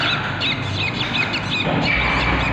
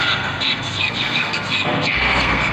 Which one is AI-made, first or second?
second